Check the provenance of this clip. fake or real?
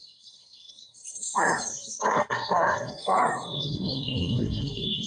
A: fake